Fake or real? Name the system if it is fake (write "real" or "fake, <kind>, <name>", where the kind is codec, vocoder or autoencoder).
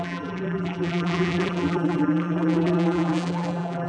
fake, vocoder, BigVGAN v2